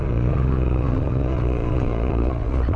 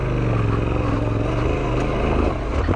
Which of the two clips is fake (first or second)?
first